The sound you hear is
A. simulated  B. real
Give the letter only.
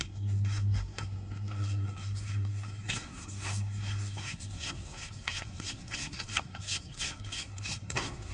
A